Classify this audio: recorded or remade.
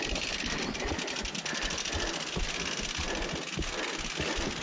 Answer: recorded